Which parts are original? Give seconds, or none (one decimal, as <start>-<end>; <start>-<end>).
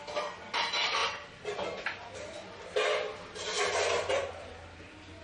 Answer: 0.0-5.2